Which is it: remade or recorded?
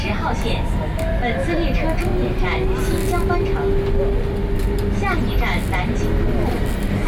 recorded